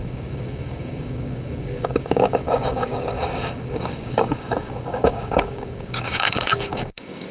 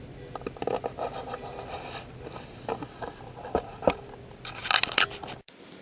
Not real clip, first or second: first